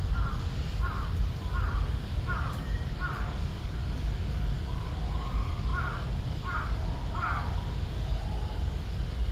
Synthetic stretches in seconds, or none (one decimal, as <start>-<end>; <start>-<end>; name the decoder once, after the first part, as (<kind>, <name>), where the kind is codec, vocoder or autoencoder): 0.0-9.3 (codec, DAC)